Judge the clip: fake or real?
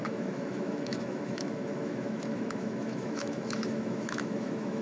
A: fake